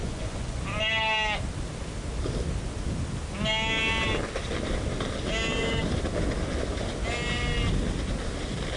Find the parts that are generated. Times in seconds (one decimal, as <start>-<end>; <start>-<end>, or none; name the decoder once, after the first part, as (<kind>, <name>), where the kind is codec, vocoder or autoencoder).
0.0-0.6 (vocoder, Vocos)